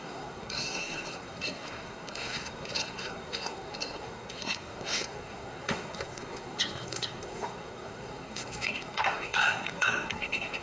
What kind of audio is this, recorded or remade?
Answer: remade